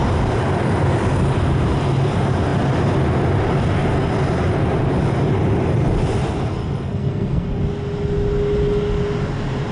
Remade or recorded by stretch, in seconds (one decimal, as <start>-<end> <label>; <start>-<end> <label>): 0.0-6.5 recorded; 6.5-7.6 remade; 7.6-9.7 recorded